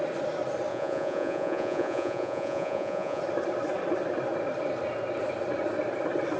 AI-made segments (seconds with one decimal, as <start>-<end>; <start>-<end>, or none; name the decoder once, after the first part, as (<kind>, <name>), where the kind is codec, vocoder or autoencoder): 0.7-3.2 (vocoder, Vocos)